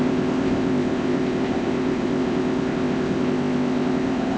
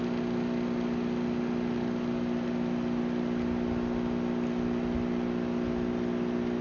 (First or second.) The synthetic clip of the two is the first